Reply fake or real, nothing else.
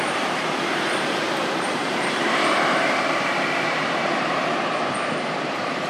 fake